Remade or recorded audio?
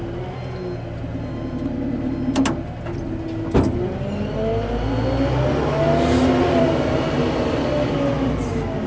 recorded